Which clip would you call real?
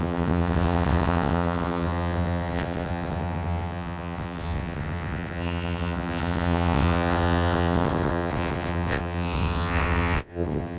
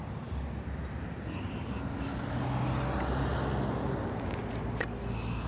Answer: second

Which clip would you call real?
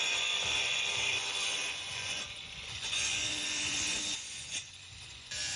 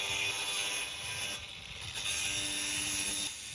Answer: second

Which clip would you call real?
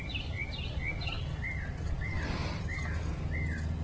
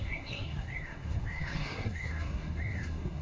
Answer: first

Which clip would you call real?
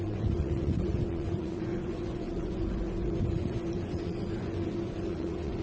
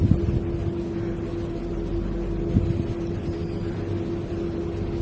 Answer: second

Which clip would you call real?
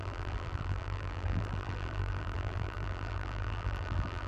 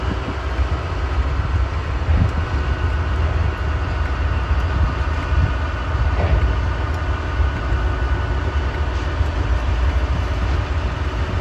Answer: second